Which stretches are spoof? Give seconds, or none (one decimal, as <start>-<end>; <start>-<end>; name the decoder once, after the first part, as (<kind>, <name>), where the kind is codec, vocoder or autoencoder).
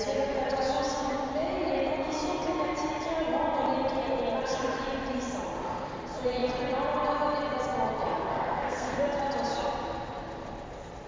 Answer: 8.3-9.0 (codec, SNAC)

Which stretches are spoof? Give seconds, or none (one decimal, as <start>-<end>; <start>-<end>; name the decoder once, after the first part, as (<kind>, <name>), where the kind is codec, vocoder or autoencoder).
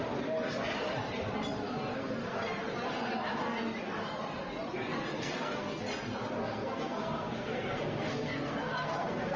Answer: 1.9-2.4 (codec, SNAC); 5.1-5.8; 6.4-9.4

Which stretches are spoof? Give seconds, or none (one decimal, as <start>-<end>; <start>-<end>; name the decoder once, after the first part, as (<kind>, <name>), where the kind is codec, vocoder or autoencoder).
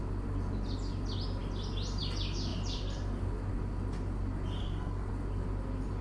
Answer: 4.6-5.1 (codec, SNAC)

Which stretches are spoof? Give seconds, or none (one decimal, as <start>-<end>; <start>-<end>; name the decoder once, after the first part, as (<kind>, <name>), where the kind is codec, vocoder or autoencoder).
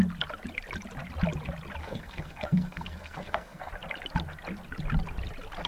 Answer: 1.8-3.7 (codec, SNAC)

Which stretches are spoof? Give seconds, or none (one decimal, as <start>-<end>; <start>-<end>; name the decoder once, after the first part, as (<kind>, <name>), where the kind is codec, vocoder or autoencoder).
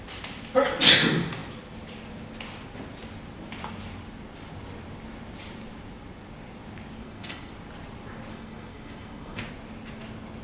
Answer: 7.0-7.5 (codec, SNAC); 8.3-9.4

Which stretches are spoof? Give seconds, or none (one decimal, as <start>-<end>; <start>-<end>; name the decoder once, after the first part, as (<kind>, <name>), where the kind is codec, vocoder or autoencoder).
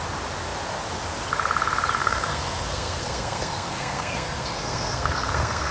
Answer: 2.0-5.7 (codec, SNAC)